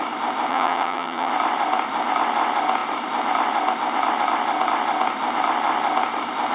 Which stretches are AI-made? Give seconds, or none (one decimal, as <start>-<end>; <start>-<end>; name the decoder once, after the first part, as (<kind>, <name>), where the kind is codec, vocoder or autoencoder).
0.5-1.3 (vocoder, HiFi-GAN)